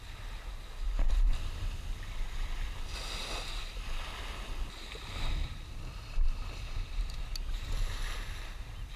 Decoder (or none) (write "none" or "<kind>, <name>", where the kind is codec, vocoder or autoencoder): none